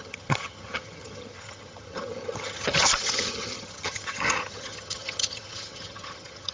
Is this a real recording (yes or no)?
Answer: no